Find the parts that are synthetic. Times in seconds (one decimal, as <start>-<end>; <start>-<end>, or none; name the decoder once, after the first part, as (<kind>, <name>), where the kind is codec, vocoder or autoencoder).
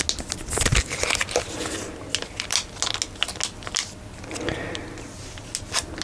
none